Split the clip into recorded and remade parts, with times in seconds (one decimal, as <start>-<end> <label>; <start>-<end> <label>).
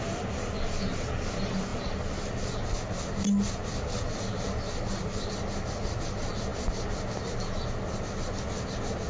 0.0-9.1 recorded